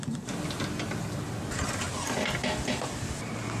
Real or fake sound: real